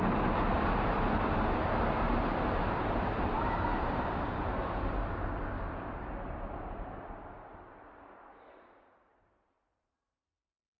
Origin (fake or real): fake